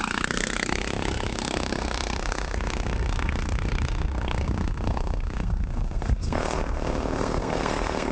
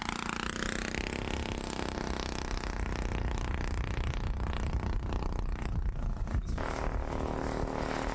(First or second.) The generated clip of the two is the first